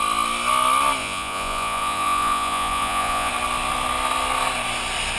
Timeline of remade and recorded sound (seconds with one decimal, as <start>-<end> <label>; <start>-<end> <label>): 0.0-1.0 recorded; 1.0-3.3 remade; 3.3-5.2 recorded